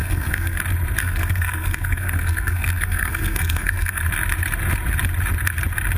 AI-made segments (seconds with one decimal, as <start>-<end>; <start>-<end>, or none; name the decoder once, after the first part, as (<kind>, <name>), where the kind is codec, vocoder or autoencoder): 0.0-0.6 (codec, SNAC); 1.0-4.0